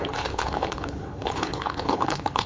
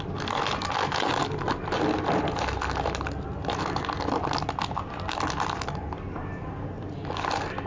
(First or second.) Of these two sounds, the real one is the second